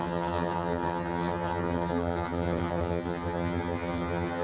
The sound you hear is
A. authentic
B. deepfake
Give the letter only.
B